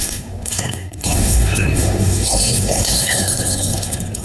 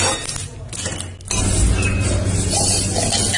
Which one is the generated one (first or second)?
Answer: first